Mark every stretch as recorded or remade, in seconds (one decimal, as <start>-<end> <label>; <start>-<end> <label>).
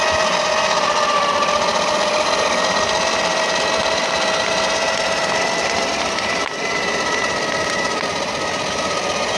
0.0-9.4 recorded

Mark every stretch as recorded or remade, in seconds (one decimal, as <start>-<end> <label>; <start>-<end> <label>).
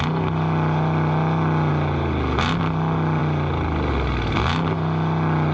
0.0-5.5 recorded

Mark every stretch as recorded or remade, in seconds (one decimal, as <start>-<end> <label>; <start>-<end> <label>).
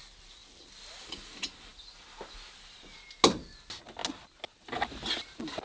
0.0-5.6 recorded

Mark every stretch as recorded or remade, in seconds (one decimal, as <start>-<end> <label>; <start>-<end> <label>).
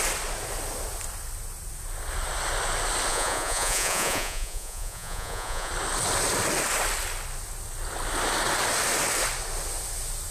0.0-3.1 recorded; 3.1-5.7 remade; 5.7-10.3 recorded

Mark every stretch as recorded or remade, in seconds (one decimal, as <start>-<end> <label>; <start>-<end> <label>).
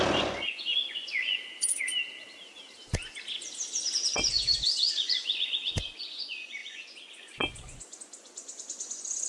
0.0-1.9 remade; 1.9-3.8 recorded; 3.8-9.3 remade